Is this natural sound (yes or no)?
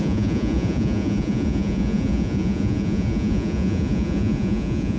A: no